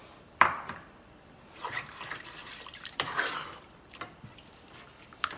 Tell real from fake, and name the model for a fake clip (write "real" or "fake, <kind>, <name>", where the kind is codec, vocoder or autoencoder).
fake, vocoder, BigVGAN v2